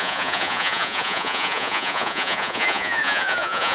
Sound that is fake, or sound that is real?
fake